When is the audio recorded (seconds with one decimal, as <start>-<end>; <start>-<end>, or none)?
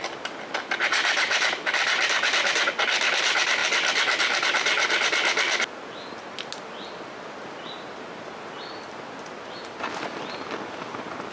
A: 0.0-11.3